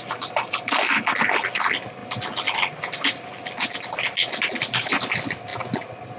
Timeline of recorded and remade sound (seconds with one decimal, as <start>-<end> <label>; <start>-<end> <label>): 0.0-6.2 recorded